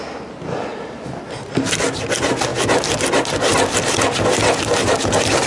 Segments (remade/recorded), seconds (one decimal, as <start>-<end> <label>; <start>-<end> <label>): 0.0-5.5 recorded